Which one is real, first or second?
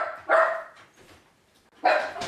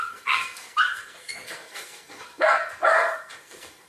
first